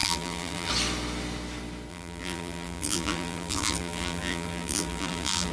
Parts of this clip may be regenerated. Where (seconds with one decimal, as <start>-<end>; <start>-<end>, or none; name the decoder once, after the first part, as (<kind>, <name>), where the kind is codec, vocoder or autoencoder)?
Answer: 0.0-0.7 (vocoder, BigVGAN v2); 1.9-5.5